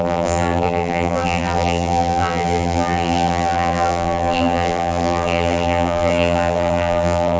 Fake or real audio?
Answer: fake